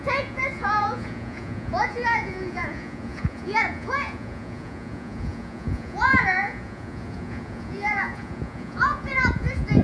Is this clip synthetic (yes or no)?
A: yes